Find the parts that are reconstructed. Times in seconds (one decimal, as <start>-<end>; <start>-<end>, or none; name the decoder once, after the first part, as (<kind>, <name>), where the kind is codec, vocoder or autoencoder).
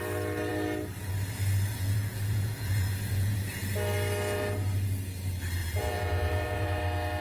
1.7-3.6 (vocoder, Vocos); 5.6-6.8